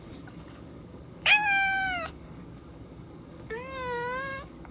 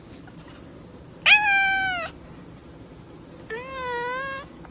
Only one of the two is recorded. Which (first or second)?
second